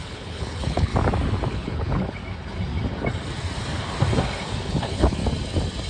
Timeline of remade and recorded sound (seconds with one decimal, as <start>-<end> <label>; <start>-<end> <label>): 0.0-0.9 remade; 0.9-1.5 recorded; 1.5-2.2 remade; 2.2-4.6 recorded; 4.6-5.2 remade; 5.2-5.9 recorded